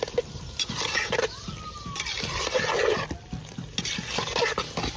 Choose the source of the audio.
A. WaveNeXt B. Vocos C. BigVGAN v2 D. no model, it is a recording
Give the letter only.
D